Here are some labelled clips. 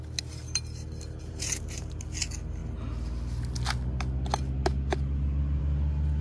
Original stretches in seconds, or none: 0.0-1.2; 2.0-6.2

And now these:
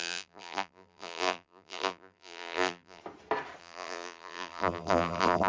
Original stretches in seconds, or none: 3.0-3.6

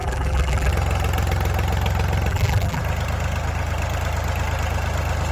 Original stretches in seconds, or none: 0.7-2.3; 2.8-5.3

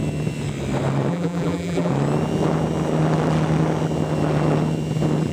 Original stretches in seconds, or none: 0.0-1.1; 1.9-5.3

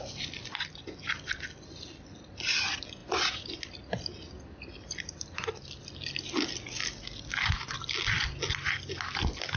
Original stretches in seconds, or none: 0.0-3.0; 3.6-9.6

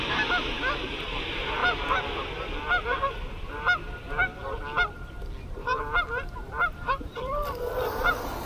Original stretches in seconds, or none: 0.0-5.7; 8.1-8.5